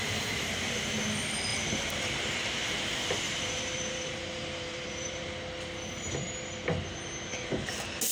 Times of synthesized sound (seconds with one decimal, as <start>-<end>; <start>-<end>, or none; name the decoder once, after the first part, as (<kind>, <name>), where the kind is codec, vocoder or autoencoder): 1.5-5.3 (vocoder, BigVGAN v2)